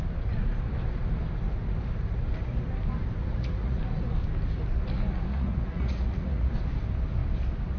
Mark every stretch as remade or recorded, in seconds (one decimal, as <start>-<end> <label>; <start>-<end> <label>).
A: 0.0-3.2 recorded; 3.2-3.8 remade; 3.8-5.3 recorded; 5.3-6.5 remade; 6.5-7.8 recorded